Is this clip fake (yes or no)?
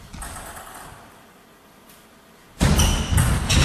no